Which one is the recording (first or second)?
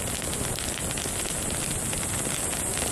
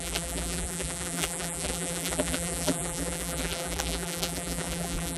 first